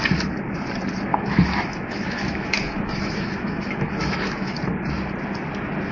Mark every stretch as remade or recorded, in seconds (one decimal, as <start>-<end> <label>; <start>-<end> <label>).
0.0-1.1 recorded; 1.1-4.6 remade; 4.6-5.9 recorded